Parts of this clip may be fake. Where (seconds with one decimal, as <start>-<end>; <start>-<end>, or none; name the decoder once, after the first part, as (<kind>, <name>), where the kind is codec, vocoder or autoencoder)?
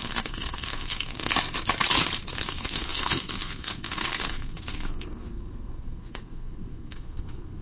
0.0-1.3 (codec, SNAC); 2.3-7.6